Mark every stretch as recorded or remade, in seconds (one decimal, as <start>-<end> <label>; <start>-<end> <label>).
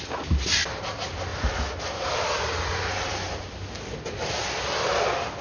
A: 0.0-5.4 recorded